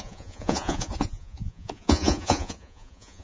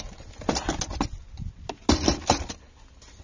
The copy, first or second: first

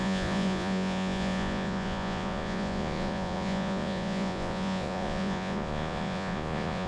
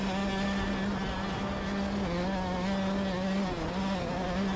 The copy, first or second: first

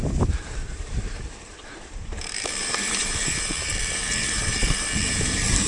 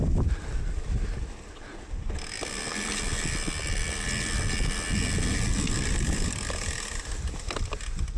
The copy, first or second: first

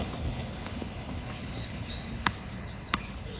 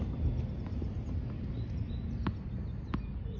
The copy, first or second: first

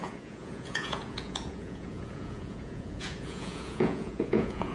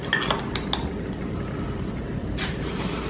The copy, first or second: first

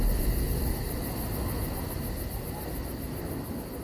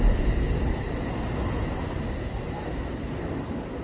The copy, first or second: second